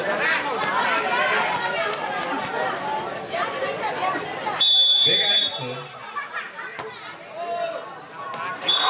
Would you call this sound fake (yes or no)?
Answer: no